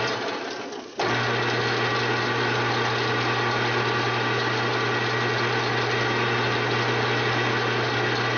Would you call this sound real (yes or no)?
yes